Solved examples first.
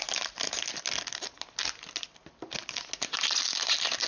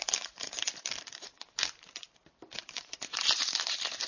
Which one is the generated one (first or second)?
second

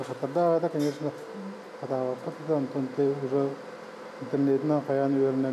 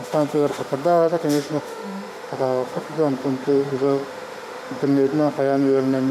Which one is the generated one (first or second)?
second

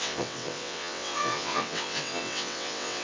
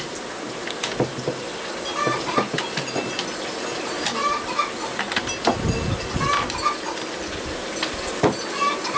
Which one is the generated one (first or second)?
first